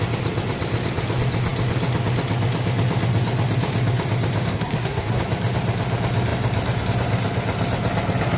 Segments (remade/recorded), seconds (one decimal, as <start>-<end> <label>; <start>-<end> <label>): 0.0-4.5 recorded; 4.5-5.2 remade; 5.2-8.4 recorded